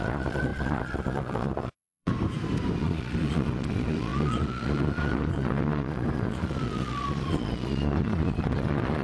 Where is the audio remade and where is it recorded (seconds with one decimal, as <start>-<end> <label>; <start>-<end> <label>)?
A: 0.0-2.1 remade; 2.1-2.8 recorded; 2.8-9.0 remade